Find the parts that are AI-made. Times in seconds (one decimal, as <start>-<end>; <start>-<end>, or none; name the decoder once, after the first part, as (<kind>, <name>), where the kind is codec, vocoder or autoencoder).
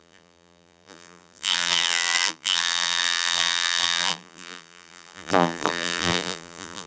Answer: 0.0-6.9 (vocoder, BigVGAN v2)